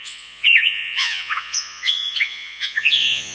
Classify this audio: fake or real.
fake